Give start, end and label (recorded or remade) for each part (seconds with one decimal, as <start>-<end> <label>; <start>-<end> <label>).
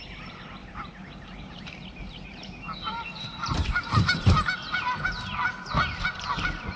0.0-0.6 recorded; 0.6-4.7 remade; 4.7-6.8 recorded